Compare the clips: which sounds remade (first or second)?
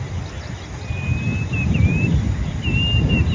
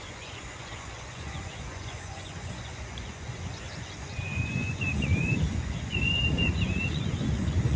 second